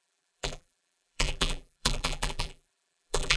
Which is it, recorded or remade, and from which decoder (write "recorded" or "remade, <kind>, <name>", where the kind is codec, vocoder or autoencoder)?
remade, vocoder, BigVGAN v2